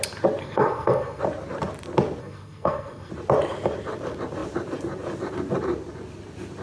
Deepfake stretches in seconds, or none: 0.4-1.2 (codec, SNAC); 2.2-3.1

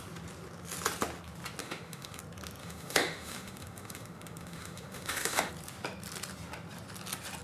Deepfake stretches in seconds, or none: 1.6-2.2 (autoencoder, DAC-VAE); 2.6-5.5

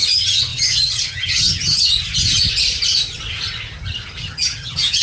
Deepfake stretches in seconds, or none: 0.0-1.9 (vocoder, HiFi-GAN); 4.2-5.0

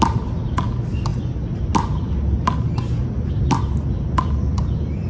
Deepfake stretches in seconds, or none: none